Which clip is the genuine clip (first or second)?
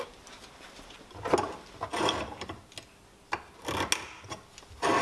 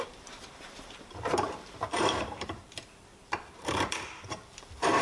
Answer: first